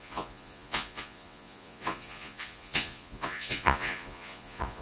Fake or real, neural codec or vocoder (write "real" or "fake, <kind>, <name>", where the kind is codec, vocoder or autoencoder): fake, vocoder, Vocos